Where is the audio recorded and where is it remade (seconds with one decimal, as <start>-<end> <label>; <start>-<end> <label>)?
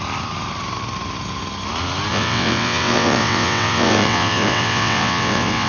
0.0-2.1 recorded; 2.1-5.7 remade